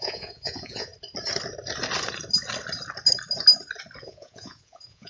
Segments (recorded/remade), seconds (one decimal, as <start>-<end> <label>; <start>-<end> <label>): 0.0-0.9 remade; 0.9-4.0 recorded; 4.0-5.1 remade